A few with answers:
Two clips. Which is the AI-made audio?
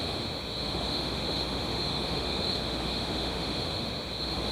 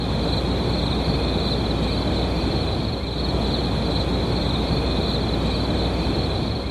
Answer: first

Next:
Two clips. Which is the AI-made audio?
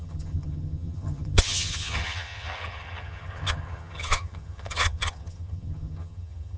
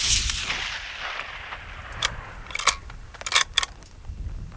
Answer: first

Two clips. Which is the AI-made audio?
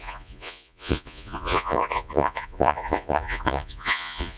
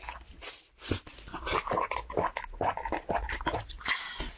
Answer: first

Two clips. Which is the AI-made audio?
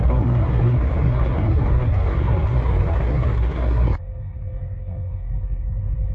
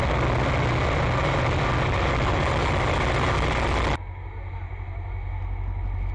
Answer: first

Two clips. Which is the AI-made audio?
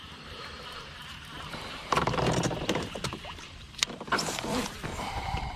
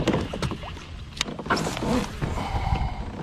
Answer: first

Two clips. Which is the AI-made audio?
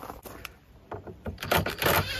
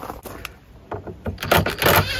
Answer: first